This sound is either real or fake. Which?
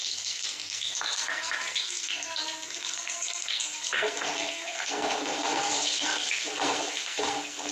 fake